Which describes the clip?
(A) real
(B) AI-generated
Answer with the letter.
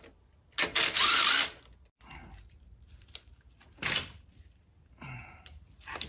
A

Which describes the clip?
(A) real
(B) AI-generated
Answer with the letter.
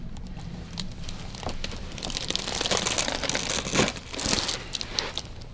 A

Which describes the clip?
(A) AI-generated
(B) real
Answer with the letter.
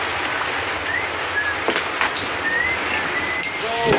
B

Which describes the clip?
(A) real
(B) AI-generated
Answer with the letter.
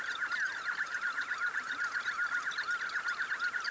A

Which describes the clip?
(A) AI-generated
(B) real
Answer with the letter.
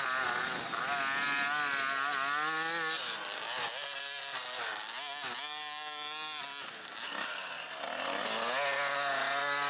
B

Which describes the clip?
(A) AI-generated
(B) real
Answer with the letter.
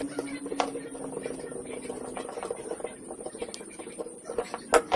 B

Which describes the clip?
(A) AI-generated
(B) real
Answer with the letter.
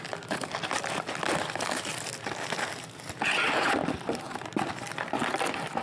B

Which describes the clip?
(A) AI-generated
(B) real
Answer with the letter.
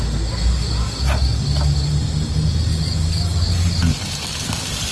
B